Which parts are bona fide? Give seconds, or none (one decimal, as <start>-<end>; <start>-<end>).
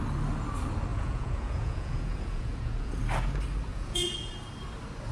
0.0-0.9; 3.0-3.7; 4.3-5.1